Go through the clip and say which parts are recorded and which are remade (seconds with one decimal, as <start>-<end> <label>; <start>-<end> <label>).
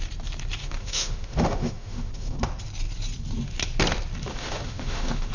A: 0.0-0.6 recorded; 0.6-2.4 remade; 2.4-4.3 recorded; 4.3-5.3 remade